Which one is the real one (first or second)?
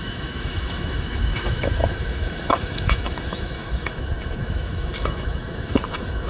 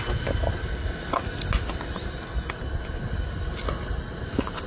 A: second